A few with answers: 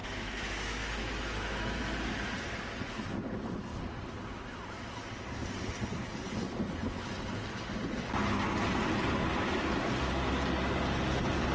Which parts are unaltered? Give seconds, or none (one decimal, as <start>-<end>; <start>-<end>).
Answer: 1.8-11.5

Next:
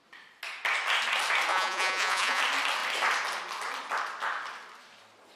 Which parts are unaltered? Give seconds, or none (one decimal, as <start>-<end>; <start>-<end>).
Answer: 0.0-1.5; 2.4-5.4

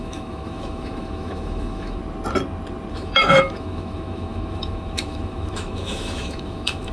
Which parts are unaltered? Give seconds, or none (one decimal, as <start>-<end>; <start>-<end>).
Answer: 2.0-2.9